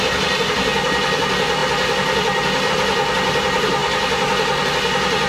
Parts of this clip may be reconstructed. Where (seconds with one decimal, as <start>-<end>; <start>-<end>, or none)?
none